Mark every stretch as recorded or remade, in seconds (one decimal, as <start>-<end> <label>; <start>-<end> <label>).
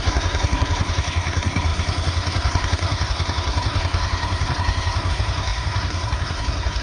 0.0-6.8 remade